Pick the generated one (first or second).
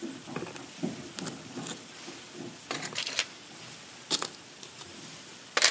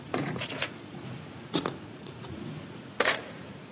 second